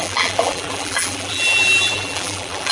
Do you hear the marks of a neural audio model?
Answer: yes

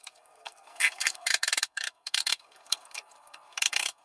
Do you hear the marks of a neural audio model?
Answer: yes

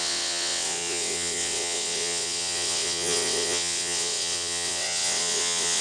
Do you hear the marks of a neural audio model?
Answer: yes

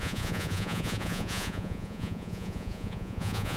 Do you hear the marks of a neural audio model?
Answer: yes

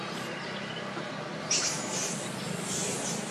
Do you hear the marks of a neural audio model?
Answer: no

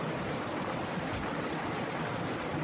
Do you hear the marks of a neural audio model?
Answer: no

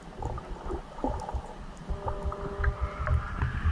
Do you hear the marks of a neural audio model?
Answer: no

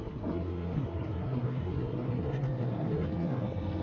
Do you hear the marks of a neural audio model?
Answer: yes